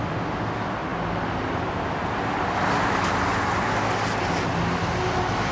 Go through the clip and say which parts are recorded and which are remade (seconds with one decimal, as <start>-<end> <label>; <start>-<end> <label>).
0.0-5.5 recorded